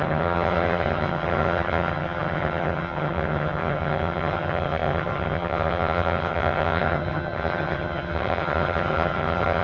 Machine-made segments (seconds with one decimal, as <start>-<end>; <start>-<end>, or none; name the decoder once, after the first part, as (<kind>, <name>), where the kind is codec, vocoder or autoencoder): 0.0-9.6 (vocoder, HiFi-GAN)